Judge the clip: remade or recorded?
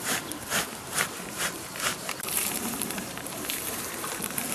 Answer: remade